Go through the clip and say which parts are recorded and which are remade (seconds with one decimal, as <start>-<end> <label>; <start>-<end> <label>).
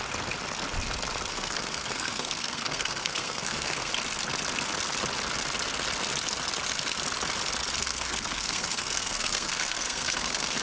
0.0-1.3 recorded; 1.3-3.9 remade; 3.9-7.8 recorded; 7.8-10.6 remade